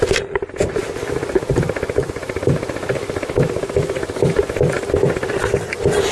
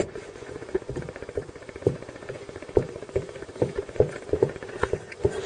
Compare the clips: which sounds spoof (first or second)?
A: second